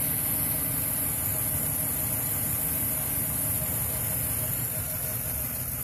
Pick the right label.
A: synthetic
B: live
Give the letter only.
B